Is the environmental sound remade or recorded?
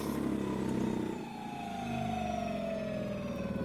recorded